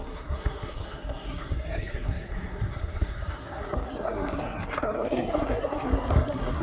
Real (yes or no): no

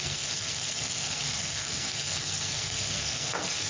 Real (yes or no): no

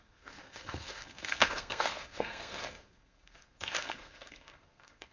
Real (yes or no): no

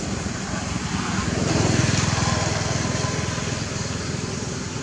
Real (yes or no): yes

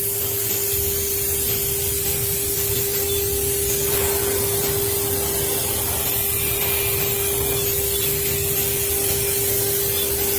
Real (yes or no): yes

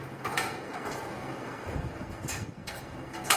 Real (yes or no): no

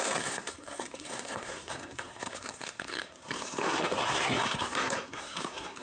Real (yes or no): no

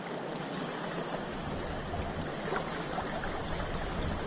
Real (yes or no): yes